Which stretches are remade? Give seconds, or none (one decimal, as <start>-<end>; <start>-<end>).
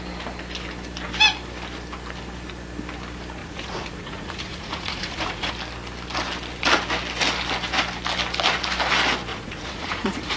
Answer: 3.4-5.5; 9.3-10.4